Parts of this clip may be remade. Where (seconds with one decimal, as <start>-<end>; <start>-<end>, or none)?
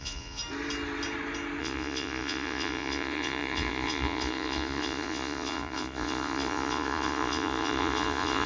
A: 0.0-0.4; 1.6-8.5